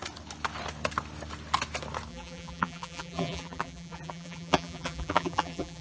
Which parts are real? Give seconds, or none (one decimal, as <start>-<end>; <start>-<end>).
0.0-2.1